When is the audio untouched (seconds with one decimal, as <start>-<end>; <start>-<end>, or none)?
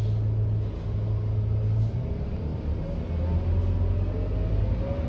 0.0-5.1